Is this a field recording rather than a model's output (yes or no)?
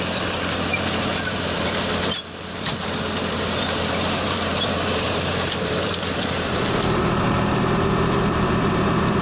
no